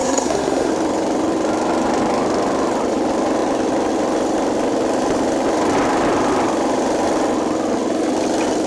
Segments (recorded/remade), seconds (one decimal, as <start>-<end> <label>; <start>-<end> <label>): 0.0-0.7 remade; 0.7-8.7 recorded